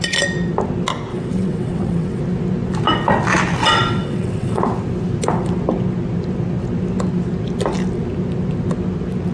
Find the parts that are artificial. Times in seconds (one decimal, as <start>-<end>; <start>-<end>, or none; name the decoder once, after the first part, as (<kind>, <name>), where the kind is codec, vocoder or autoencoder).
1.1-2.2 (vocoder, WaveNeXt); 3.6-4.6